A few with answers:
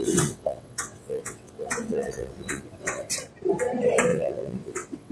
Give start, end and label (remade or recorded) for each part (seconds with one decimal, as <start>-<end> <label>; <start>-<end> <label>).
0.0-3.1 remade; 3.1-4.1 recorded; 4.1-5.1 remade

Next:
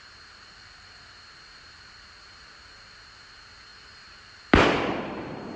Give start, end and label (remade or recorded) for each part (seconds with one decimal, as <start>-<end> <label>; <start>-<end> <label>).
0.0-5.6 remade

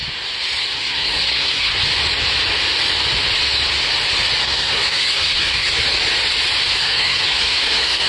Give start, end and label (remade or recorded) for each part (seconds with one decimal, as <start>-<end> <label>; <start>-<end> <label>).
0.0-0.6 recorded; 0.6-1.7 remade; 1.7-4.4 recorded; 4.4-5.8 remade; 5.8-6.8 recorded; 6.8-8.1 remade

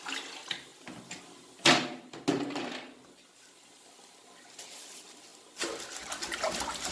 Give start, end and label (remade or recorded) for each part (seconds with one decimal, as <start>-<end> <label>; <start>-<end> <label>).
0.0-6.9 recorded

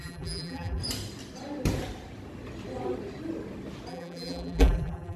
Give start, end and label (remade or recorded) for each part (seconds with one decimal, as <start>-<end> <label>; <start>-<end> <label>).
0.0-0.8 remade; 0.8-3.9 recorded; 3.9-5.2 remade